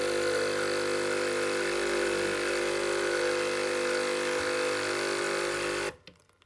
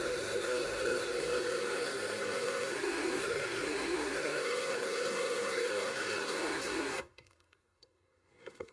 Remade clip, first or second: second